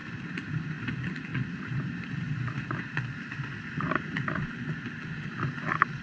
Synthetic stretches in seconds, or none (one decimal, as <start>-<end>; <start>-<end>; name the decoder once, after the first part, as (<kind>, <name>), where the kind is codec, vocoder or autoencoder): 0.0-0.8 (vocoder, BigVGAN v2); 1.3-2.5